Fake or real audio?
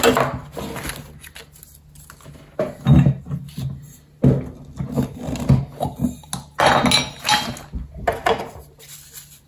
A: real